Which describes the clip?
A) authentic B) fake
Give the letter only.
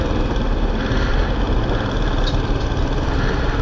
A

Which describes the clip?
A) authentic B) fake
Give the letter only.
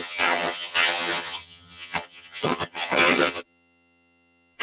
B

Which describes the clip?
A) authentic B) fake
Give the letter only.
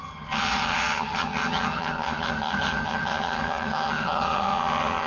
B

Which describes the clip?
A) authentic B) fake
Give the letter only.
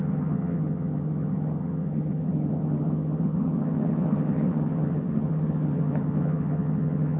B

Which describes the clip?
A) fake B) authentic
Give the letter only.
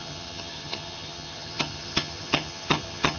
A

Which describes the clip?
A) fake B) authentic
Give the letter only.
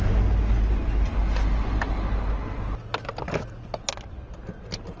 B